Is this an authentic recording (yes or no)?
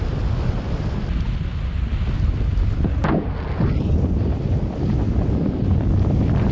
yes